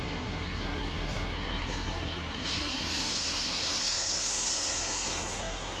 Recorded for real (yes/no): no